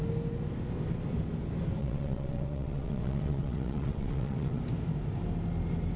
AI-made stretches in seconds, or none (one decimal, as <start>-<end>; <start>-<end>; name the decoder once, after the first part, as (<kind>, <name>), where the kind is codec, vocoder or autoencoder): 1.8-4.6 (vocoder, WaveNeXt)